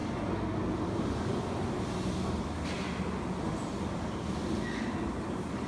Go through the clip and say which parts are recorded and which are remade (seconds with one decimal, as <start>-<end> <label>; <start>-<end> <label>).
0.0-3.4 recorded; 3.4-5.7 remade